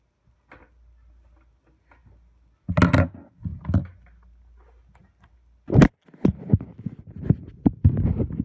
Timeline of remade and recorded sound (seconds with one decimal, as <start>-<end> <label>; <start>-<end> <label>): 0.0-8.4 recorded